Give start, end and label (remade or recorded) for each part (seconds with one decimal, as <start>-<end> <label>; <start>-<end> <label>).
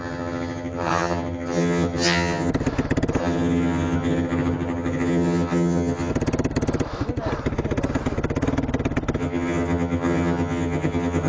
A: 0.0-2.5 remade; 2.5-3.2 recorded; 3.2-6.1 remade; 6.1-9.2 recorded; 9.2-11.3 remade